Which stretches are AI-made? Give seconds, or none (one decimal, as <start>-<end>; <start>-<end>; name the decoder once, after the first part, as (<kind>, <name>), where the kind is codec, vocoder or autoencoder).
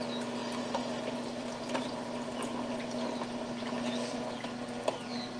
none